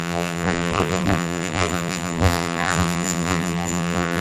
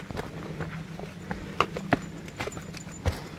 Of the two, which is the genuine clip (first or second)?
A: second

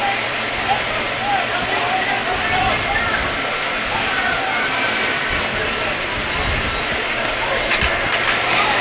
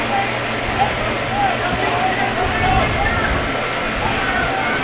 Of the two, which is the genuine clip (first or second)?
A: second